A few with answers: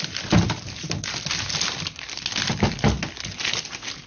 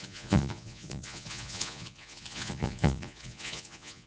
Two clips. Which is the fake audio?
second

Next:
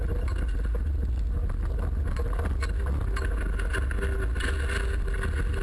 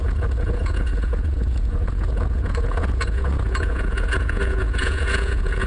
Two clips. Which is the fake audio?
second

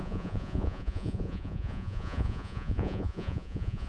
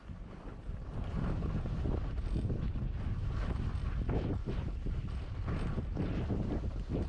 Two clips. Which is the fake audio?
first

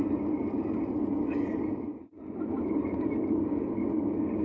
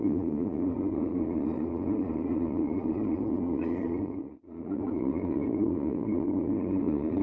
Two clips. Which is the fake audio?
second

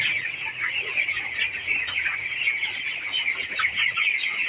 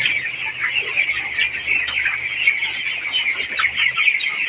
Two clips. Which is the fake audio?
first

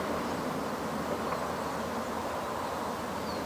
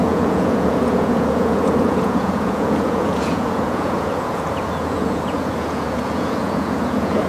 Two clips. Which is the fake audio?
second